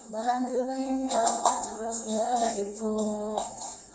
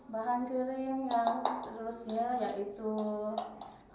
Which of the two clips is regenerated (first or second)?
first